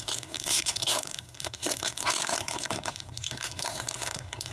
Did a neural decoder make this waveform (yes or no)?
yes